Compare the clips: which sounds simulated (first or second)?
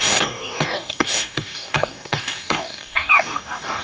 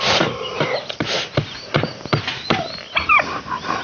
first